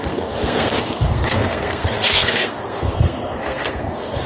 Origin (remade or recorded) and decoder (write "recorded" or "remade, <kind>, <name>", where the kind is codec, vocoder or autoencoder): remade, codec, SNAC